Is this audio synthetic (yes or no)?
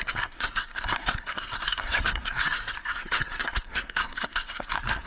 yes